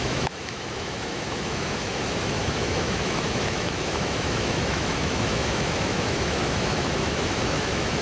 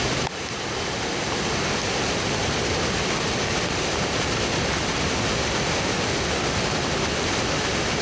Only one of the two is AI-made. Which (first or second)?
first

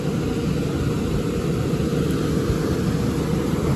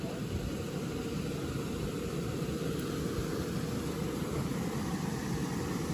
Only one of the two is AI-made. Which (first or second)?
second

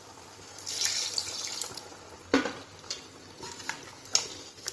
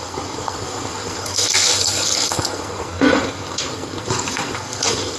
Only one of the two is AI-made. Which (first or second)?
second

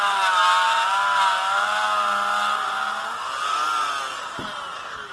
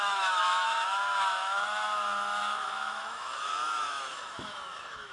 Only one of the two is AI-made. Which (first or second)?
second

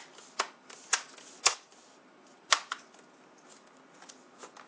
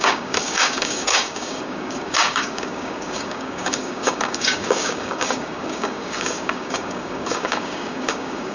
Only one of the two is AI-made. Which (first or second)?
second